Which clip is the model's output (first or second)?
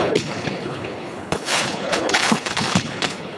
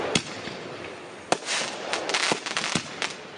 first